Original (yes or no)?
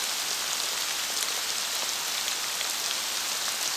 yes